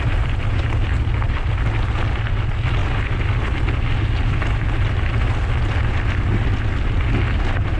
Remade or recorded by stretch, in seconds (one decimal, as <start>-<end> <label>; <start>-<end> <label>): 0.0-7.8 recorded

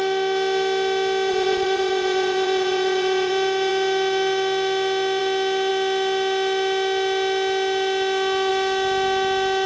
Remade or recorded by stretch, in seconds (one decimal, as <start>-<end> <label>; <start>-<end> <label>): 0.0-1.3 recorded; 1.3-3.3 remade; 3.3-9.7 recorded

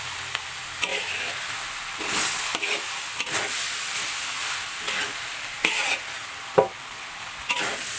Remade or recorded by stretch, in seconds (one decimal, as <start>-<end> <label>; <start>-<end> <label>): 0.0-8.0 recorded

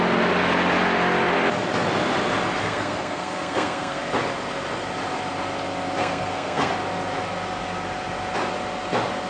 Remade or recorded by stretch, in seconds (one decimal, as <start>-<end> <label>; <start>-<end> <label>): 0.0-2.6 recorded; 2.6-4.0 remade; 4.0-6.0 recorded; 6.0-6.7 remade; 6.7-9.3 recorded

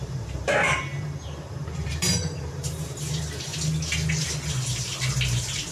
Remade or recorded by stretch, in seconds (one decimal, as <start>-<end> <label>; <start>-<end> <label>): 0.0-3.5 remade; 3.5-4.5 recorded; 4.5-5.7 remade

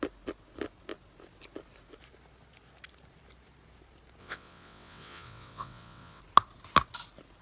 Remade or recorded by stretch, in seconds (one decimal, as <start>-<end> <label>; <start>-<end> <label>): 0.0-4.2 recorded; 4.2-6.2 remade; 6.2-7.4 recorded

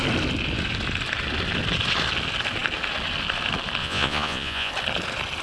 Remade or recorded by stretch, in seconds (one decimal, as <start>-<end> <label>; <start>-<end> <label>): 0.0-3.8 recorded; 3.8-4.7 remade; 4.7-5.4 recorded